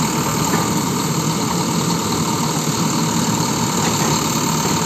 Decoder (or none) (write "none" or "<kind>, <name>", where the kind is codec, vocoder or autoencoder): none